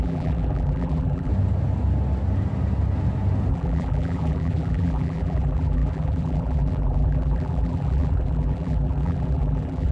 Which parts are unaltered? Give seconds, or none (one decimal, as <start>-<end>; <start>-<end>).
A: 1.3-3.5